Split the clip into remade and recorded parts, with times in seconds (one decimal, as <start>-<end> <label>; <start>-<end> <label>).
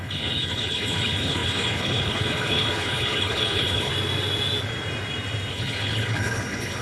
0.0-3.9 remade; 3.9-5.5 recorded; 5.5-6.8 remade